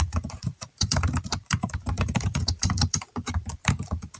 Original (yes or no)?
no